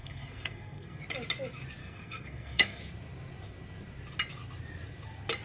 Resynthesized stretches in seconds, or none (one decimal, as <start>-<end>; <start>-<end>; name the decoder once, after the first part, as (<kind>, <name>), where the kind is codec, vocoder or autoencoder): 0.0-1.0 (codec, SNAC); 1.8-2.8